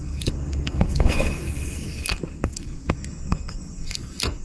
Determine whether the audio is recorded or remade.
remade